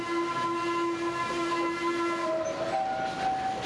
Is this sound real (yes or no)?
yes